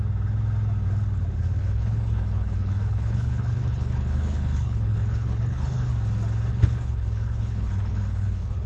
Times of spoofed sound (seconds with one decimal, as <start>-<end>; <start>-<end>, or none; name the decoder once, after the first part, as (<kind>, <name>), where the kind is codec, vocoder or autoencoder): 1.6-5.9 (codec, HILCodec); 6.5-8.7